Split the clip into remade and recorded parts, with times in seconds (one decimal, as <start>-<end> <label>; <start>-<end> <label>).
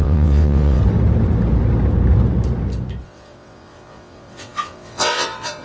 0.0-0.8 remade; 0.8-3.0 recorded; 3.0-5.6 remade